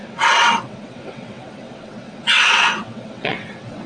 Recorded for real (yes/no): no